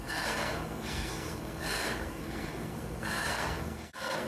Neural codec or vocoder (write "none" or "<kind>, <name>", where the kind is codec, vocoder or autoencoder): codec, SNAC